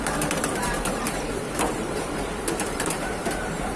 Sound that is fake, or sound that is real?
fake